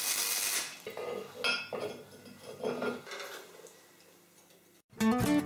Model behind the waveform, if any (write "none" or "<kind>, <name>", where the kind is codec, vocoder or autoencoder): none